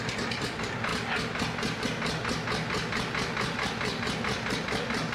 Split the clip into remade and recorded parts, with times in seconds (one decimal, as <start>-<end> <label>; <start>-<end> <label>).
0.0-5.1 recorded